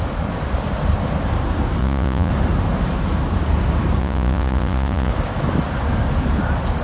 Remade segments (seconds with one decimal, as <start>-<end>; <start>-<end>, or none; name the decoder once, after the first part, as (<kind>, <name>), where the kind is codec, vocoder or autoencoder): 1.8-2.3 (vocoder, Vocos); 4.0-5.1